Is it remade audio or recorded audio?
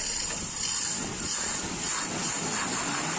recorded